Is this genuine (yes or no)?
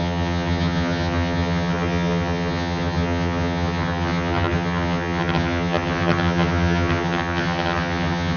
no